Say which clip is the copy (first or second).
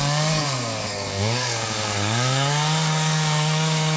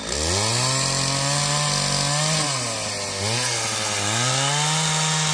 first